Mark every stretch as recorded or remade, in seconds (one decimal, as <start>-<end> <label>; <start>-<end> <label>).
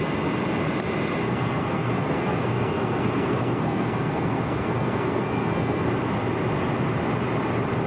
0.0-1.2 recorded; 1.2-5.9 remade; 5.9-7.9 recorded